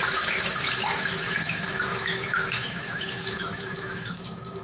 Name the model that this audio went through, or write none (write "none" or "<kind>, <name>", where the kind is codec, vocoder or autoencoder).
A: autoencoder, DAC-VAE